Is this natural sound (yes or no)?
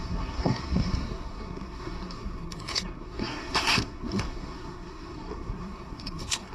no